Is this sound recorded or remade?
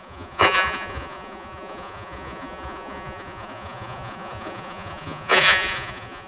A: remade